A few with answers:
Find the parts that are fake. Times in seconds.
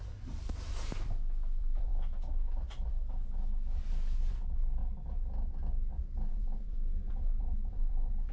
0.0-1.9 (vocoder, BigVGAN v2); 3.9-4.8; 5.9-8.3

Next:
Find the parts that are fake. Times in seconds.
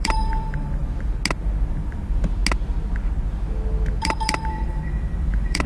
0.0-0.8 (vocoder, BigVGAN v2); 1.7-2.4; 4.0-5.7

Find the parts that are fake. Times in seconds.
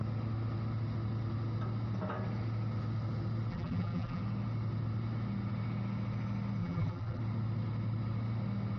3.5-4.2 (vocoder, BigVGAN v2); 6.6-7.2